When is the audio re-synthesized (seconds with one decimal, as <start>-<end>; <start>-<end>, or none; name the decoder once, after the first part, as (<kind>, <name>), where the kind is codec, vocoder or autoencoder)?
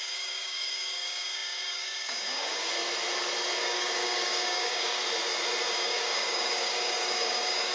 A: 0.0-2.7 (codec, DAC); 3.6-5.0; 5.7-7.7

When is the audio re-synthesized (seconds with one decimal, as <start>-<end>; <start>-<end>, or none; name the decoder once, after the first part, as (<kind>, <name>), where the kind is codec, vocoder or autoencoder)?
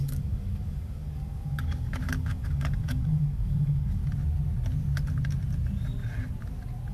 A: 0.0-4.0 (codec, DAC)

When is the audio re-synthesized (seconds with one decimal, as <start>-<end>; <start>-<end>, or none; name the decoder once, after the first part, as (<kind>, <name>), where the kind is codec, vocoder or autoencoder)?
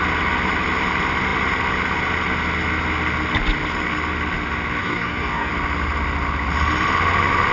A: 4.8-5.5 (codec, DAC)